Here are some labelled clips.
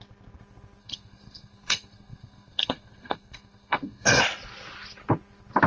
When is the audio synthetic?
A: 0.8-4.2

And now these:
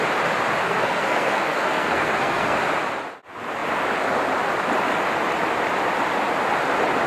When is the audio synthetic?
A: 0.6-2.6